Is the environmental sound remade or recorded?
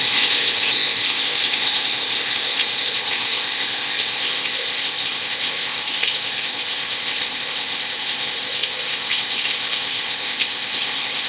remade